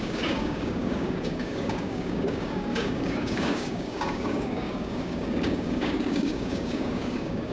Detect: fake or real fake